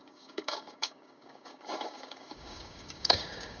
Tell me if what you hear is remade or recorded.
remade